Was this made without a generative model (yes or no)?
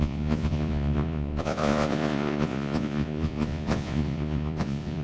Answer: no